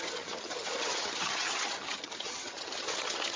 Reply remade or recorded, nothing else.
remade